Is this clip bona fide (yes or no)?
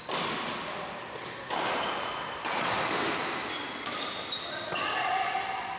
yes